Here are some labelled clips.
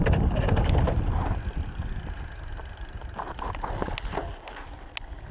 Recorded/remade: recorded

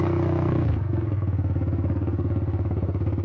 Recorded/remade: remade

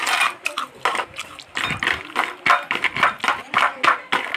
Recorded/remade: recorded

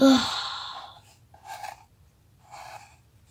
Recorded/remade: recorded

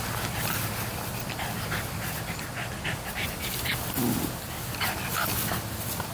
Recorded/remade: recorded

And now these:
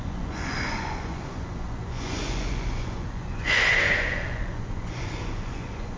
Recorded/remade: remade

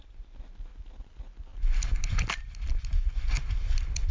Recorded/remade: recorded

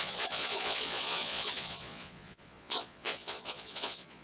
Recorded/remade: remade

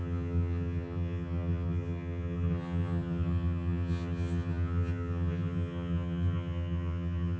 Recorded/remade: remade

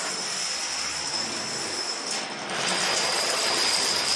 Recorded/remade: recorded